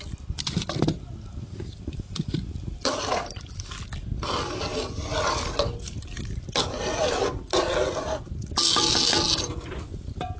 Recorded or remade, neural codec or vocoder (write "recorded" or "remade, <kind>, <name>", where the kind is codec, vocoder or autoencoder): recorded